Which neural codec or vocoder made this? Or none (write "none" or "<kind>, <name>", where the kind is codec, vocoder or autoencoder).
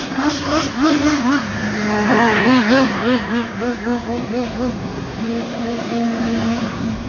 codec, SNAC